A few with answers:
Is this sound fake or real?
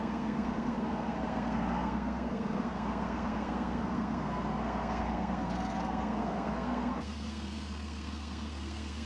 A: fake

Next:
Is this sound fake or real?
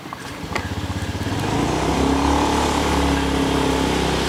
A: real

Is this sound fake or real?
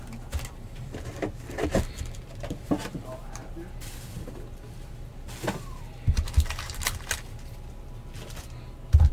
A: real